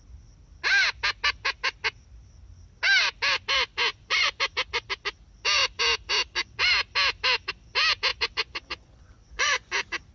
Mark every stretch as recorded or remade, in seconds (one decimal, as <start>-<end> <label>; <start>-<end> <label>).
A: 0.0-3.9 recorded; 3.9-4.4 remade; 4.4-8.1 recorded; 8.1-9.7 remade; 9.7-10.1 recorded